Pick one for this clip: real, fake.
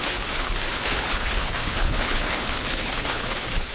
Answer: fake